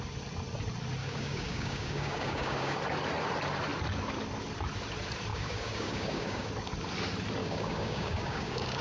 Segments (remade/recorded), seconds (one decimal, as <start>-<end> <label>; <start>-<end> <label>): 0.0-1.0 recorded; 1.0-2.8 remade; 2.8-5.3 recorded; 5.3-6.5 remade; 6.5-7.4 recorded; 7.4-8.8 remade